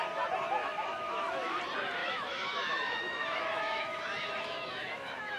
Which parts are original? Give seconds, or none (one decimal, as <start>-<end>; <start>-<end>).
0.0-0.6; 1.6-2.0